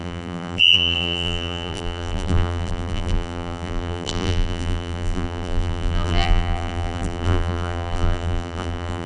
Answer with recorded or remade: remade